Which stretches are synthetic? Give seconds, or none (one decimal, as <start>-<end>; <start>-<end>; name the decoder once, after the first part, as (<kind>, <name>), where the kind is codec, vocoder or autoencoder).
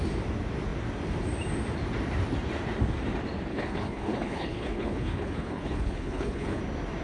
3.5-6.6 (codec, HILCodec)